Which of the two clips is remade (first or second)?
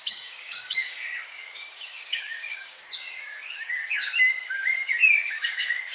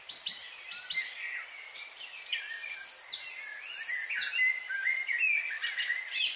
first